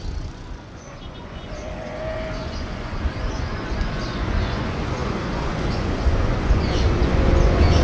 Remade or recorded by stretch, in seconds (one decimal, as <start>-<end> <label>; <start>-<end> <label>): 0.0-7.8 remade